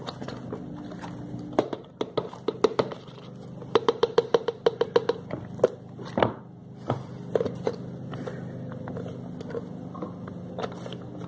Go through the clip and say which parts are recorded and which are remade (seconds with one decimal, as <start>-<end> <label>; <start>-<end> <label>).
0.0-11.3 recorded